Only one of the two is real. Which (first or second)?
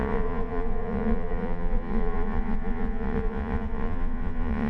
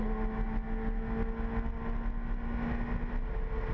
second